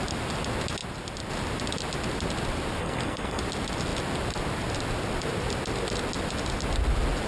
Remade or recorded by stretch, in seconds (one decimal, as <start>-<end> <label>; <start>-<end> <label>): 0.0-2.8 recorded; 2.8-3.4 remade; 3.4-7.3 recorded